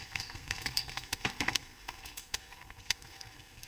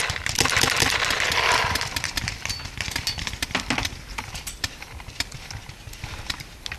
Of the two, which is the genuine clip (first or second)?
second